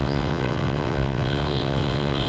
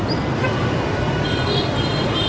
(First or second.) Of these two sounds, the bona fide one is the second